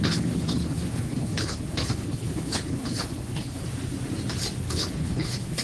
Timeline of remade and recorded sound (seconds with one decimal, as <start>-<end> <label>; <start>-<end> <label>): 0.0-3.6 remade; 3.6-4.6 recorded; 4.6-5.6 remade